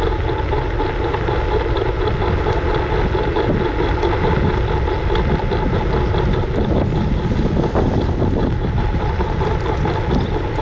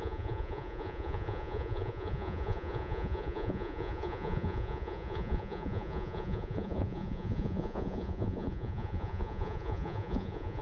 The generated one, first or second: second